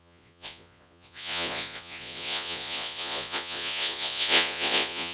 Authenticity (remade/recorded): remade